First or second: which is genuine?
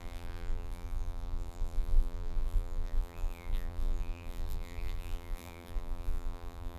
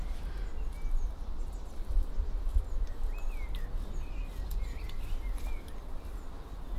second